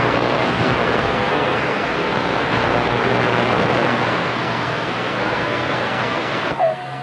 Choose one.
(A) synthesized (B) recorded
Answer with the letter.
A